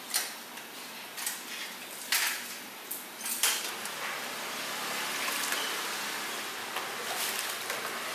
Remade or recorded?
recorded